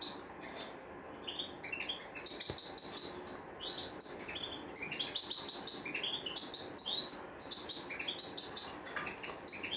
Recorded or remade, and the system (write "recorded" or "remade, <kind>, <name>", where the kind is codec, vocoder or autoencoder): recorded